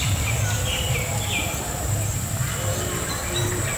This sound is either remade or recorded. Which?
recorded